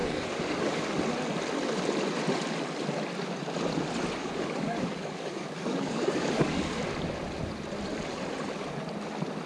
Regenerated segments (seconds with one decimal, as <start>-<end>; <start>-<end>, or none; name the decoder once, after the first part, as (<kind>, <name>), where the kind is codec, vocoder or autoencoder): 0.0-0.9 (codec, DAC); 4.2-6.8